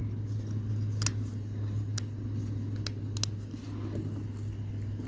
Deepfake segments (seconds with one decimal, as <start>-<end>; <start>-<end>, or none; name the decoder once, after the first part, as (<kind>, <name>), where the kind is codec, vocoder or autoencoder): none